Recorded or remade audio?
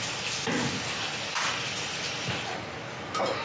recorded